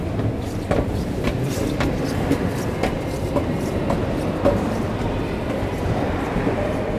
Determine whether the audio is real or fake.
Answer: fake